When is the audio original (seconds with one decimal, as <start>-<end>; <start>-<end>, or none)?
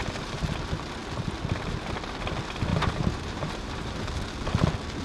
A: 0.5-2.7; 4.0-5.0